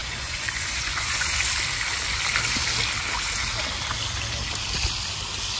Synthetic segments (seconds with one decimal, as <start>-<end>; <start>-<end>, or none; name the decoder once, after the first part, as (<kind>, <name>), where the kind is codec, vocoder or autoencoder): 0.0-1.4 (vocoder, Vocos)